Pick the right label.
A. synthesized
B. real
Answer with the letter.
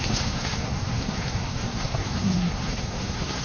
A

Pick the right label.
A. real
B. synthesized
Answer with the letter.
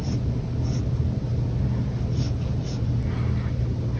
A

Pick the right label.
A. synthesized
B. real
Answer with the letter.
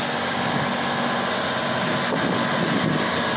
B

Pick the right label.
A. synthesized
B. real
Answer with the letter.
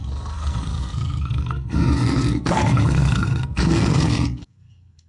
A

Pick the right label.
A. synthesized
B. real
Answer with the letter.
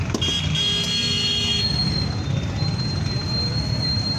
B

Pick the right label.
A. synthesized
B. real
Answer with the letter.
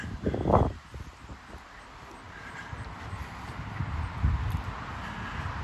B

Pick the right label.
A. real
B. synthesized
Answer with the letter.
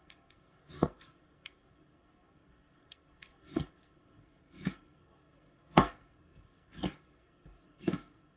B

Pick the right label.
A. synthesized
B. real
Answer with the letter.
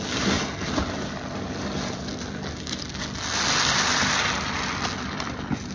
B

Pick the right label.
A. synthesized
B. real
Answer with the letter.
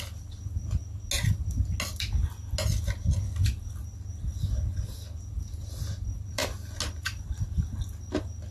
B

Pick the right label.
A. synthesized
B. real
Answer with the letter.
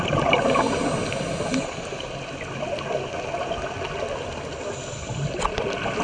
B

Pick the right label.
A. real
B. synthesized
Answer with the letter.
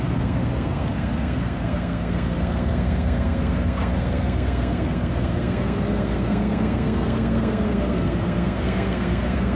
B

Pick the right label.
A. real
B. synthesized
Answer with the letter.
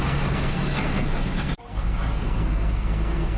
B